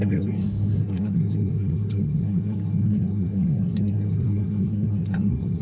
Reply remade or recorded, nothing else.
remade